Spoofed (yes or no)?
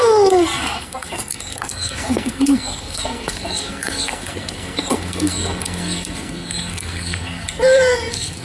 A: yes